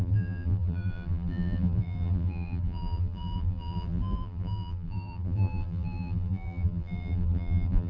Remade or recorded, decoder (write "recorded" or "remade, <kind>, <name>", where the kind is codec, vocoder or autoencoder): remade, vocoder, BigVGAN v2